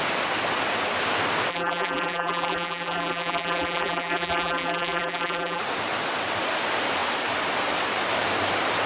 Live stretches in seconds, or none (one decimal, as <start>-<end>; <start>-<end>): 0.0-1.5; 5.6-8.9